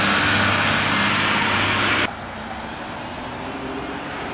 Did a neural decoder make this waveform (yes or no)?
no